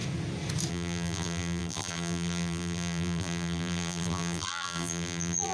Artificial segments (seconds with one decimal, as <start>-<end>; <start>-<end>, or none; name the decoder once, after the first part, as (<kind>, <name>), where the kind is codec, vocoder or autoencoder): 0.7-5.5 (vocoder, BigVGAN v2)